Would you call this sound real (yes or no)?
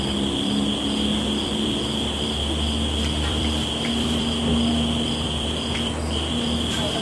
no